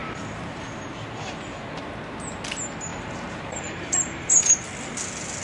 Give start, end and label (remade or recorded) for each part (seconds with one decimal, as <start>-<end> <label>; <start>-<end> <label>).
0.0-1.8 remade; 1.8-2.9 recorded; 2.9-4.5 remade; 4.5-5.4 recorded